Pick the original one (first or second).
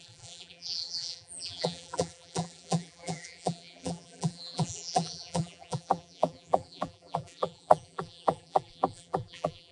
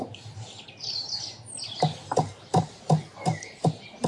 second